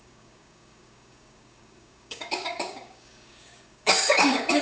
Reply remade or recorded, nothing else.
remade